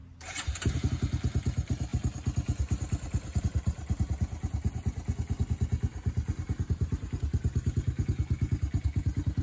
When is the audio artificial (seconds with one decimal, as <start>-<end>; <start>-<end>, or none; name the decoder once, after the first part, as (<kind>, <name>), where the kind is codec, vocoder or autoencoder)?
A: 0.0-0.9 (vocoder, BigVGAN v2); 5.9-7.1